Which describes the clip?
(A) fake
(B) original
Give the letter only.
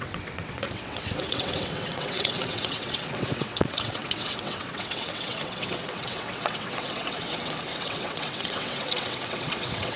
A